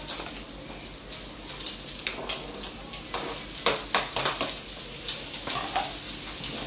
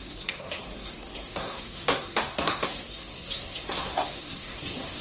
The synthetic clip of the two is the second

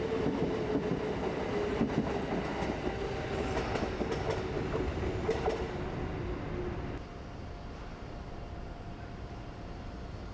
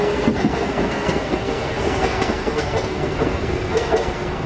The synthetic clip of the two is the second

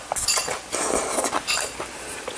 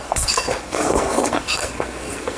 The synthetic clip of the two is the second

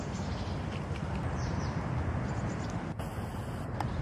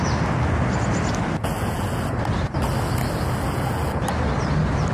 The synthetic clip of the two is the first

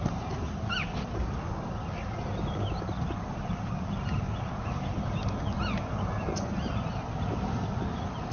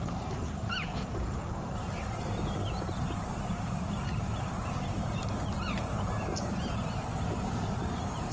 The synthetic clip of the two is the second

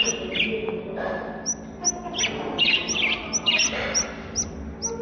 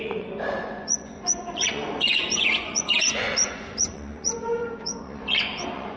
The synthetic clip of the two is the second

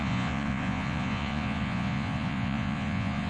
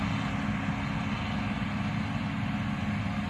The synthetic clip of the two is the first